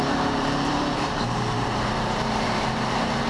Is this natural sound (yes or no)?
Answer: no